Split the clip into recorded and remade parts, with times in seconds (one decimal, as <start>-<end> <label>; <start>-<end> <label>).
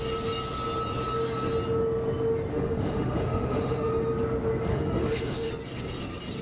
0.0-2.5 recorded; 2.5-3.9 remade; 3.9-4.7 recorded; 4.7-5.5 remade; 5.5-6.4 recorded